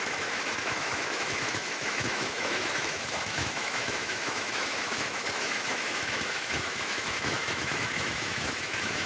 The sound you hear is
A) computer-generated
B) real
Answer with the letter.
A